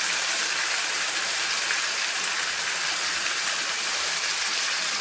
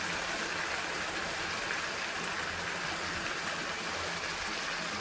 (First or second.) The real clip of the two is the second